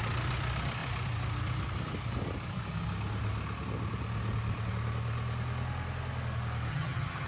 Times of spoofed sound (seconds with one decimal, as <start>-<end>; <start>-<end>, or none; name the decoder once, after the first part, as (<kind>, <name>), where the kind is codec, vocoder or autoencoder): 6.7-7.3 (vocoder, HiFi-GAN)